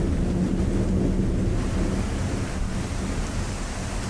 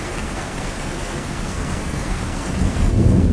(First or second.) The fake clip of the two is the second